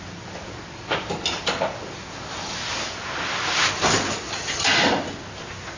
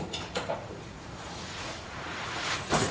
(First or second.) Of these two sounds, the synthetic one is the second